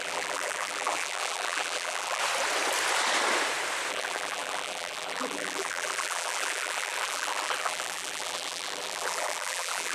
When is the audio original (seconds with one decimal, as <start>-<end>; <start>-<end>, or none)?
2.2-3.9